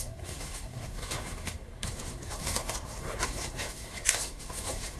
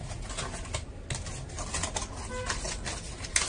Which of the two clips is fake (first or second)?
first